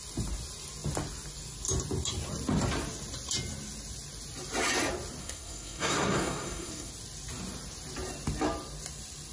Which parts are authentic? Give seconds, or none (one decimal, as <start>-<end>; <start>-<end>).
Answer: 0.0-5.2; 6.9-9.3